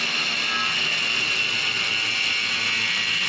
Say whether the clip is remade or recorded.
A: recorded